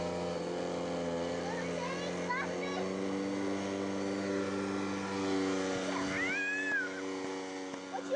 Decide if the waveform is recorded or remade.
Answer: recorded